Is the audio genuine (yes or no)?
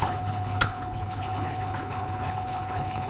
no